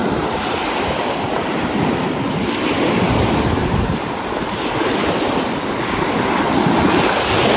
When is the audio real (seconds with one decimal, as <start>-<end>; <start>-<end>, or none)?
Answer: 0.0-3.6; 4.7-7.6